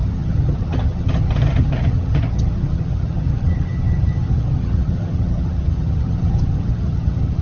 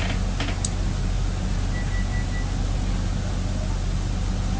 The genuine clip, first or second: second